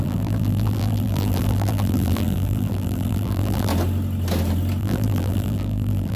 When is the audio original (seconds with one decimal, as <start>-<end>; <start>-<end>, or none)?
3.7-4.8